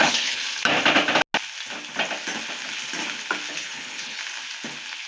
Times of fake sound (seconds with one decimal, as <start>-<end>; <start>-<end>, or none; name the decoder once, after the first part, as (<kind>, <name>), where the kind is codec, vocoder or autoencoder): 0.0-0.4 (codec, HILCodec); 3.5-4.2

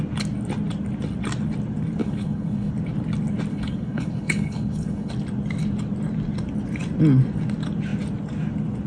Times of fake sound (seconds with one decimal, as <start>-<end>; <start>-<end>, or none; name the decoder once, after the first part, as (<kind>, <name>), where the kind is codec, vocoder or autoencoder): 2.0-2.7 (codec, HILCodec); 3.5-5.1

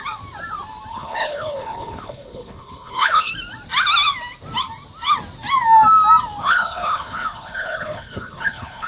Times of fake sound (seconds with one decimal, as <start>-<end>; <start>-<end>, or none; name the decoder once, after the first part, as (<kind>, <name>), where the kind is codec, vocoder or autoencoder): 0.9-3.3 (codec, HILCodec); 6.4-8.9

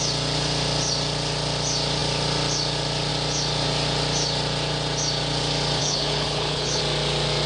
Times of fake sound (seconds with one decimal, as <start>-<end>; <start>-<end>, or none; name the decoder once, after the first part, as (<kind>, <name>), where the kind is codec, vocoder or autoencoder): 5.8-6.8 (codec, HILCodec)

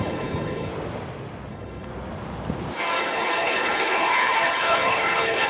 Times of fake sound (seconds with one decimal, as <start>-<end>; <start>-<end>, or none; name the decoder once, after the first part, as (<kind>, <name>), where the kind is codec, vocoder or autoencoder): 0.0-0.7 (codec, HILCodec); 1.5-1.9; 3.0-5.5

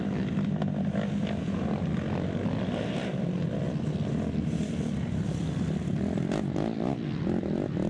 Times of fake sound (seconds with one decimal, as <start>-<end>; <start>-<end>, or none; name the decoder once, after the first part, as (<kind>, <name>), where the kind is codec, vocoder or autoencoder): none

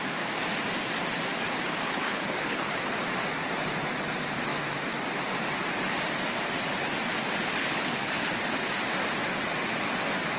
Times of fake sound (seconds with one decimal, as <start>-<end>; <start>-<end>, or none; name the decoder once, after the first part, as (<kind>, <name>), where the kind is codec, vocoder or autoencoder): 1.8-2.8 (codec, HILCodec); 7.6-8.3